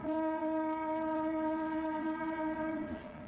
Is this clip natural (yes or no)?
no